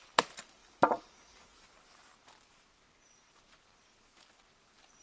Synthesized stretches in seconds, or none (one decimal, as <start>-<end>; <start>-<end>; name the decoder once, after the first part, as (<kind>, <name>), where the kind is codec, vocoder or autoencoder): 0.6-3.6 (vocoder, BigVGAN v2)